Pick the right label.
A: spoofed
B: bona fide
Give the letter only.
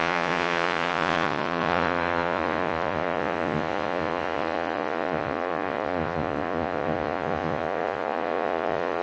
A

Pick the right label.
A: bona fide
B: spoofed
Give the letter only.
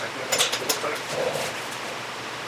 A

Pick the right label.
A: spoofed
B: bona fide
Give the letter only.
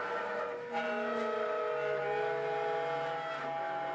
B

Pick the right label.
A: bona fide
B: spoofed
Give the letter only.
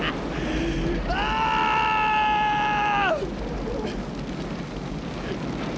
A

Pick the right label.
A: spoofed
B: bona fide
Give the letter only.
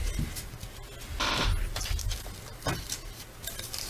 B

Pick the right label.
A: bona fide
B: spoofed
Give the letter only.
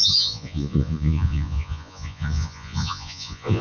B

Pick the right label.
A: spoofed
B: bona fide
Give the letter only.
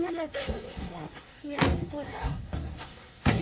A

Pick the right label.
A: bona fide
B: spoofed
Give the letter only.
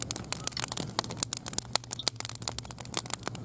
A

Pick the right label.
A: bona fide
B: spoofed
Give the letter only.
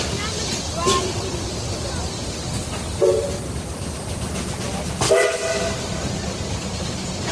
A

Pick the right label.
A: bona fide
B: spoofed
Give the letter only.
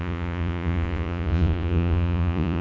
B